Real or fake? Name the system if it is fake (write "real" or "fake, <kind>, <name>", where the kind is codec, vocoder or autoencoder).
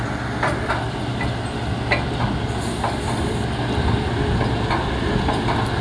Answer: real